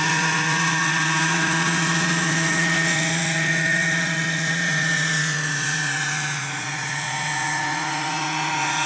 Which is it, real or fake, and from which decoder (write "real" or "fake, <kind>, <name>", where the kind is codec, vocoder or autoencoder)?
fake, vocoder, Vocos